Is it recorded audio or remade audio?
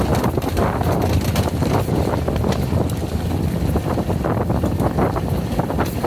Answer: recorded